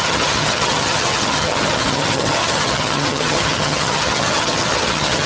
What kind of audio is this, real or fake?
fake